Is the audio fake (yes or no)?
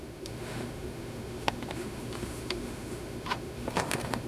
yes